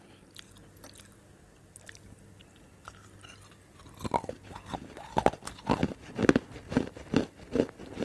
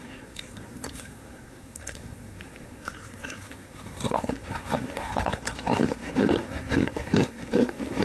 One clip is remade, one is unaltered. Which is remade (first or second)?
second